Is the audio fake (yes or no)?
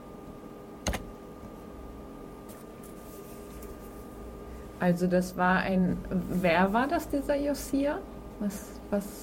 yes